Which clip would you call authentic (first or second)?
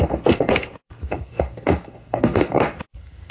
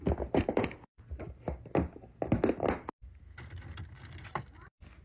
second